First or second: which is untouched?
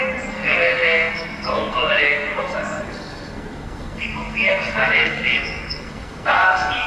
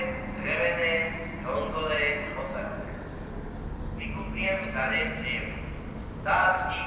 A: second